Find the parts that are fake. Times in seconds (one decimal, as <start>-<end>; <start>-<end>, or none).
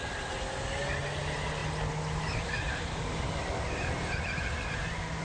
none